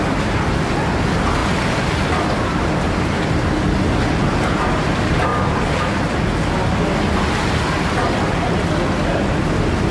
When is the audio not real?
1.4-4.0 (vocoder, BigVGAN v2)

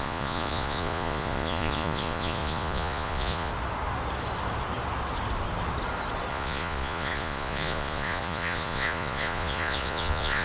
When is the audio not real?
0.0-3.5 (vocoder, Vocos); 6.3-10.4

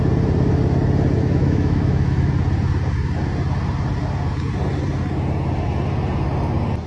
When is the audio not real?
1.2-2.3 (autoencoder, DAC-VAE)

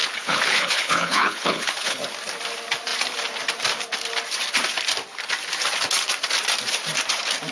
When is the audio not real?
0.0-2.0 (codec, HILCodec)